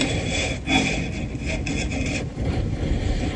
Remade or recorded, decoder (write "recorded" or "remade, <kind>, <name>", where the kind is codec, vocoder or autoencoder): recorded